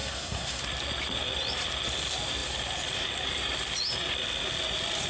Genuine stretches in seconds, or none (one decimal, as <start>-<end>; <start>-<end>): 0.6-5.1